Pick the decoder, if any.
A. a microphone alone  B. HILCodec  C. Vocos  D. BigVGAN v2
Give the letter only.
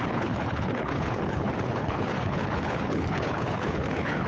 B